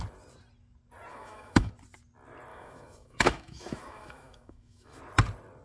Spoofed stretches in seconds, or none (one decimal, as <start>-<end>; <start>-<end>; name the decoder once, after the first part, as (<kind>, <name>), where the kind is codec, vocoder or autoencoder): 1.1-1.7 (autoencoder, DAC-VAE); 2.5-5.0